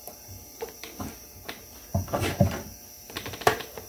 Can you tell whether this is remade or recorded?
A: remade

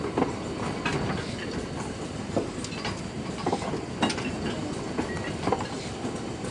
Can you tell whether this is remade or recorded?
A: recorded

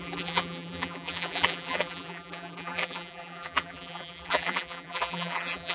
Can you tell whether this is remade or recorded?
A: remade